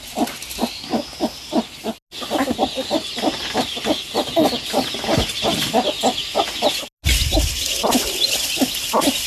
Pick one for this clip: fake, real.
real